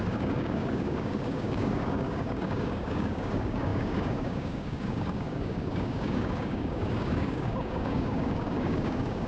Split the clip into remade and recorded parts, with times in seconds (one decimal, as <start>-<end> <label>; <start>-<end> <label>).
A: 0.0-9.3 remade